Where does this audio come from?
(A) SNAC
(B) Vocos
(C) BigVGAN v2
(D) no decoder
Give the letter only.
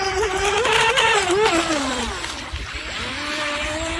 D